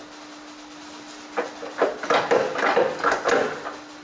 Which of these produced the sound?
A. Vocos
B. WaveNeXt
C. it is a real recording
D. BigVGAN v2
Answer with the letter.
C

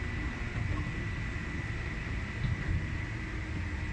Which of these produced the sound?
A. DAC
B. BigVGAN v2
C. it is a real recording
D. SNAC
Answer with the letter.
C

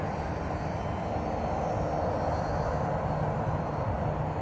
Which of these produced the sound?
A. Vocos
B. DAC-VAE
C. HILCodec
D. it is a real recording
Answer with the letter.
D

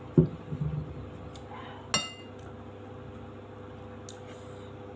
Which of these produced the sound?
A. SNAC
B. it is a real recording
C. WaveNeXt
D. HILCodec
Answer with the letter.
B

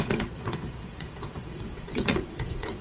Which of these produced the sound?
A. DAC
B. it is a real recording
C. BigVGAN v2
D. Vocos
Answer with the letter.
D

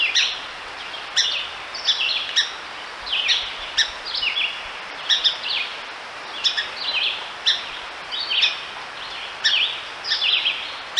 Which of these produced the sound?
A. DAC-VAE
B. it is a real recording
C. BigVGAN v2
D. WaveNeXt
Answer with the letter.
B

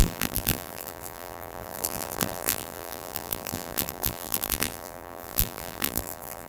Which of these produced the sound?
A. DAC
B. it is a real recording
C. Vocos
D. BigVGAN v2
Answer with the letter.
D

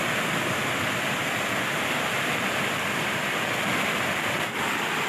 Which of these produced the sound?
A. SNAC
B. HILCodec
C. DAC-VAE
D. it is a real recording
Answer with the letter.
D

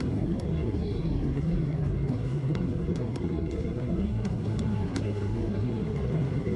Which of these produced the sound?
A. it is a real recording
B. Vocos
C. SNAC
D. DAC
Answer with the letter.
C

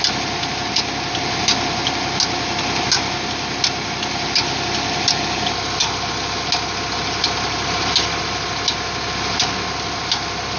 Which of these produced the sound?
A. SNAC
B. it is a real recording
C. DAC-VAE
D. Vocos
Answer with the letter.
B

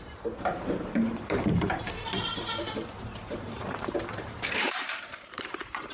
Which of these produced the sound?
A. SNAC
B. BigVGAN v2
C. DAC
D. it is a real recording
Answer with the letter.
B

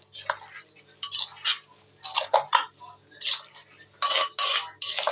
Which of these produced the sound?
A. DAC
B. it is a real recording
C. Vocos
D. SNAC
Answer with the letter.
B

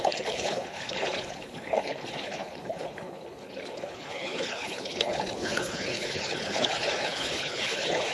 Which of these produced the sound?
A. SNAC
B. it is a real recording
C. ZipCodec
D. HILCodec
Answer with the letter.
D